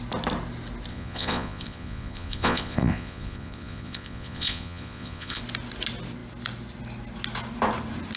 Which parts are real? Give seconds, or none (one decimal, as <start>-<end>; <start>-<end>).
0.0-0.9; 5.4-8.2